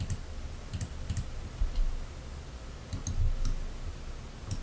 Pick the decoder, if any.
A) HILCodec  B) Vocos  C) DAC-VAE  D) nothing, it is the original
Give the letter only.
D